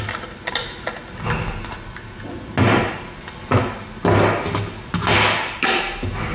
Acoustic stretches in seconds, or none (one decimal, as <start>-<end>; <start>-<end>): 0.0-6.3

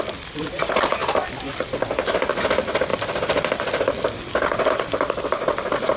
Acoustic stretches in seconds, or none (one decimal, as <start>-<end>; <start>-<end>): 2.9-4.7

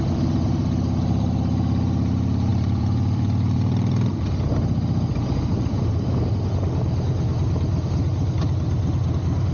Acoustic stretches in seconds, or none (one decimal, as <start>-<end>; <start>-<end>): 0.0-2.5; 4.1-5.5; 6.1-9.5

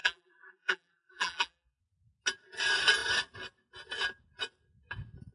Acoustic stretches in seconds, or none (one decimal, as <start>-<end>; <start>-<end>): 1.8-5.3